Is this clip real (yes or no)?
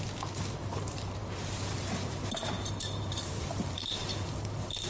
no